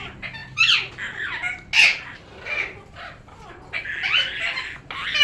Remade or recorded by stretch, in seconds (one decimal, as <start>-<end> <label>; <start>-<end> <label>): 0.0-0.4 recorded; 0.4-0.9 remade; 0.9-1.9 recorded; 1.9-4.7 remade; 4.7-5.2 recorded